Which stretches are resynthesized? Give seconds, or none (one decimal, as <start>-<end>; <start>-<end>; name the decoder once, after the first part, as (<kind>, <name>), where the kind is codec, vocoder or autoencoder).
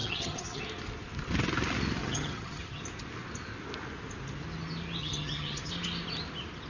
0.0-0.6 (vocoder, HiFi-GAN); 2.0-2.8; 5.0-5.7